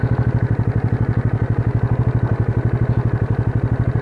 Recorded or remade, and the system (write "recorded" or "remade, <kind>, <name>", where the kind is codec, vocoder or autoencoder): recorded